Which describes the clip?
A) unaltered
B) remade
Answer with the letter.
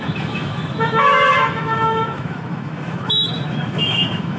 B